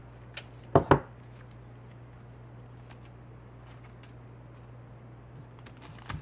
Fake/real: real